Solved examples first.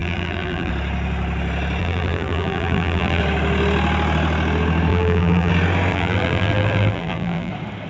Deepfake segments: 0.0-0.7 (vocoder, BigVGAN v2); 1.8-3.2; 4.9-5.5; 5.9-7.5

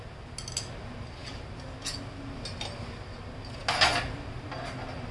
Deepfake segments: none